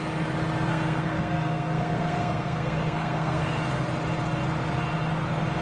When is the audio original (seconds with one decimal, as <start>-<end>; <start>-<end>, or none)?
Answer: 0.0-0.7; 3.6-5.6